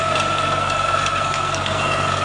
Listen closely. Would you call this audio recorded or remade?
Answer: remade